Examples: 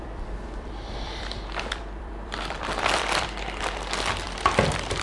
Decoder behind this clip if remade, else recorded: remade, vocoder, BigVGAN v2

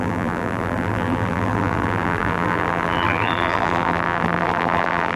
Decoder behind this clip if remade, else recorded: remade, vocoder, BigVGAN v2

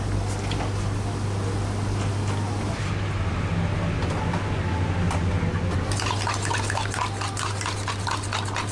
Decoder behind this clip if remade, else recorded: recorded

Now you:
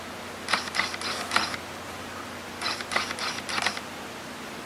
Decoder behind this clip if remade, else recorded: recorded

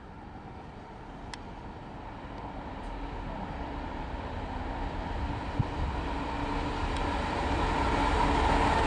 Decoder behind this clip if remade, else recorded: recorded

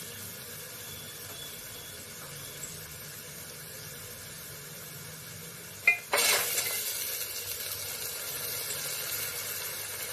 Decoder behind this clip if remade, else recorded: recorded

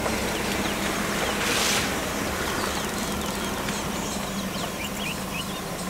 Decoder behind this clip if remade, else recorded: recorded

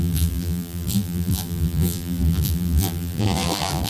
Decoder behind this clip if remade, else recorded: remade, vocoder, BigVGAN v2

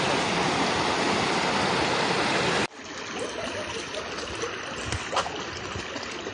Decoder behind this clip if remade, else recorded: recorded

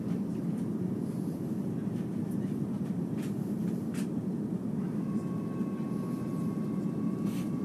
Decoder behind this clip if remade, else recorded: recorded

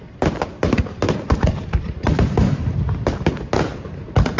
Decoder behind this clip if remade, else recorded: remade, vocoder, BigVGAN v2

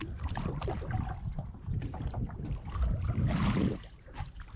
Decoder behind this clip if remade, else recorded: remade, vocoder, BigVGAN v2